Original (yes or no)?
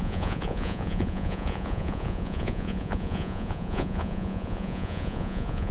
no